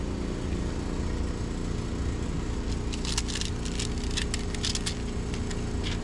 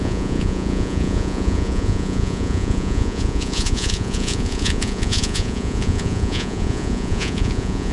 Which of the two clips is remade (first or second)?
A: second